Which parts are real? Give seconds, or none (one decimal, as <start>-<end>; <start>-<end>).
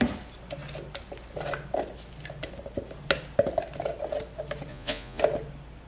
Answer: 0.0-4.7; 5.2-5.9